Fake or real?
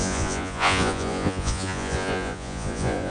fake